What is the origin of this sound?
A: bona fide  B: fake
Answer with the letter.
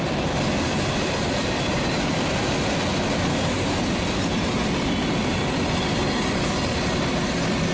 A